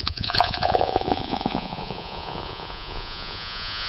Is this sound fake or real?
fake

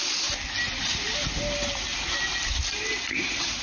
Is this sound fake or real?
real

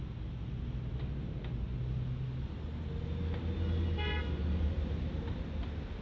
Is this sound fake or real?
real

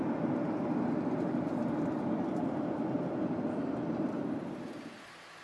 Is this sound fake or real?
real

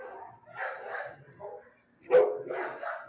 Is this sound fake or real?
real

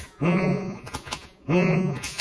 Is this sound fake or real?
fake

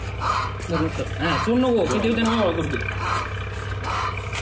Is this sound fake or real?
real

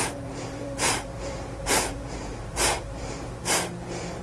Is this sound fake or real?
fake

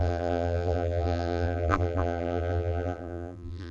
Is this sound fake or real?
fake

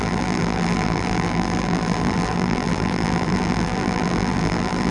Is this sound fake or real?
fake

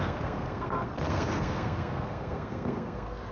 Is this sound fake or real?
fake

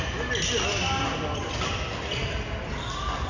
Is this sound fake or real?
real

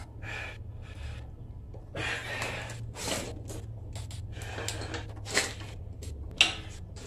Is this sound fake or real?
real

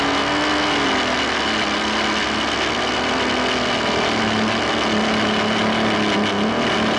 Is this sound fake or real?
real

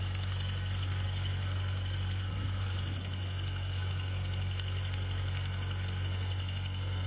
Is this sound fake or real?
fake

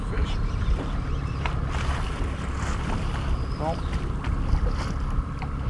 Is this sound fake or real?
real